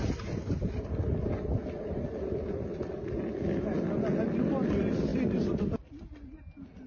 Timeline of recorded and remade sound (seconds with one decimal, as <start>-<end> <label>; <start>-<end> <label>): 0.0-6.9 recorded